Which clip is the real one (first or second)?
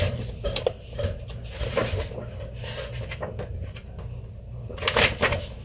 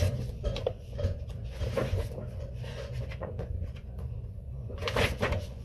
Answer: first